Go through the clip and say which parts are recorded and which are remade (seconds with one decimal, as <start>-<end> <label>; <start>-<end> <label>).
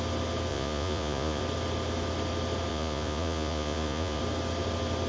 0.0-0.5 recorded; 0.5-1.4 remade; 1.4-2.7 recorded; 2.7-4.2 remade; 4.2-5.1 recorded